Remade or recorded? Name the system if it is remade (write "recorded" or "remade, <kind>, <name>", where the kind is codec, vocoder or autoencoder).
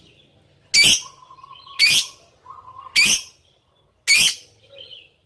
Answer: recorded